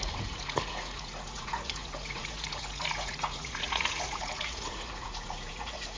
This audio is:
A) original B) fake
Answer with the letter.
B